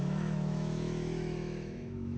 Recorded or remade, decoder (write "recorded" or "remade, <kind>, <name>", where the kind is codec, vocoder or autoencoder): remade, autoencoder, DAC-VAE